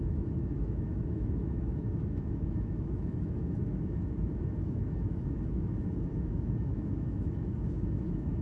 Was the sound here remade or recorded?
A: remade